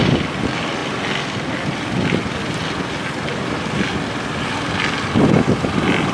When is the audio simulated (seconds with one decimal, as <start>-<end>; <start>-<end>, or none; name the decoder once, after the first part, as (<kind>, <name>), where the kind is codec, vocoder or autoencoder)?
none